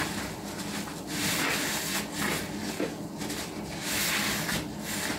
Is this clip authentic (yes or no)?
yes